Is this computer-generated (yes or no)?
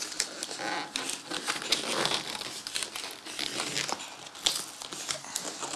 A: no